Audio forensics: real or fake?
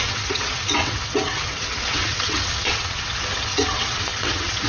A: fake